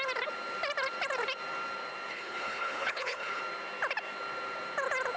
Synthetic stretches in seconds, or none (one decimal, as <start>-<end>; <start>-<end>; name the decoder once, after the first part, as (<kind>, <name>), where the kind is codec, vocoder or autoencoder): 2.1-3.4 (codec, HILCodec)